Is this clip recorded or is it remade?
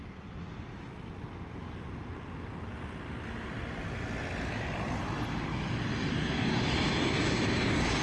recorded